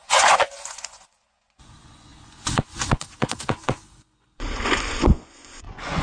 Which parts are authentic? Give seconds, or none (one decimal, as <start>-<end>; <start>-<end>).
none